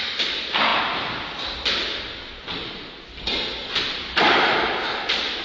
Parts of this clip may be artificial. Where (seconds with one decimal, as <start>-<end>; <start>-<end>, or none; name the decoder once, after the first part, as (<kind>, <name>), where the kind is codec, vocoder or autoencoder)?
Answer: none